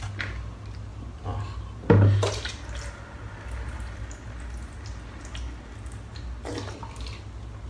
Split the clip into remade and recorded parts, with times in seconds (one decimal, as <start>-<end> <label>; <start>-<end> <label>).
0.0-7.7 recorded